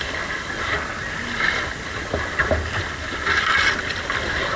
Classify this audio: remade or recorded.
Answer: recorded